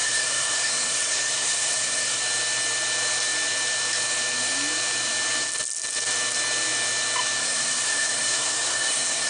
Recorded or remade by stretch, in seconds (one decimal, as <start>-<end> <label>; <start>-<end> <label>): 0.0-2.2 remade; 2.2-7.4 recorded; 7.4-9.3 remade